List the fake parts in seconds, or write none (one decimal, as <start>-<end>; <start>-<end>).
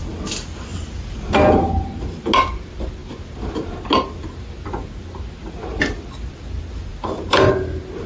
none